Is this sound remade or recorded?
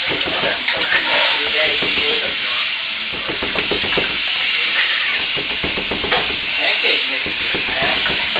remade